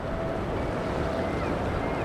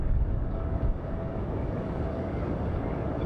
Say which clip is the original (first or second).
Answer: first